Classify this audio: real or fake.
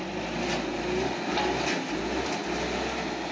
real